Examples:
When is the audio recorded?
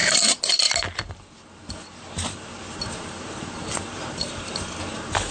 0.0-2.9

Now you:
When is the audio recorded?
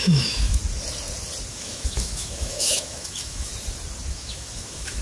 0.6-1.5; 3.5-4.1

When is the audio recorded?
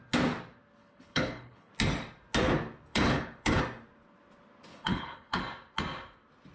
0.0-0.8; 1.7-2.9; 3.6-4.7; 5.4-6.5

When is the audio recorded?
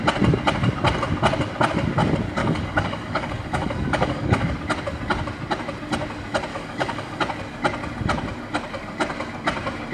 0.0-2.4; 4.5-6.5; 7.2-9.9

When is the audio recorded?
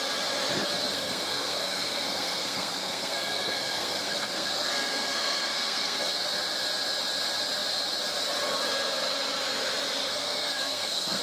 0.0-0.9; 6.0-10.0